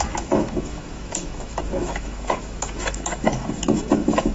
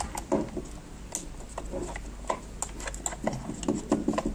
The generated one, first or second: first